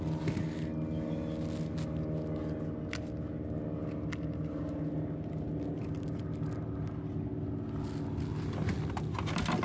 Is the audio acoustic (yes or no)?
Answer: yes